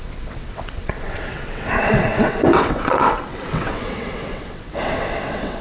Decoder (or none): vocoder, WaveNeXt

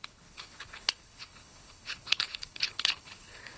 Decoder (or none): codec, HILCodec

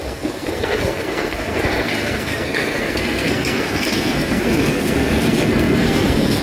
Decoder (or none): codec, SNAC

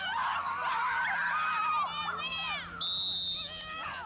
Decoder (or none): none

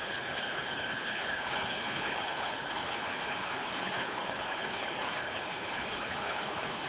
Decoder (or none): codec, HILCodec